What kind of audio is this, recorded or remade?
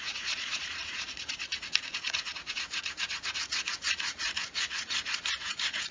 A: remade